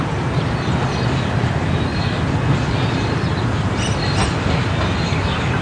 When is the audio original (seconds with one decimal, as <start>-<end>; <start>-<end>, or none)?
0.0-5.6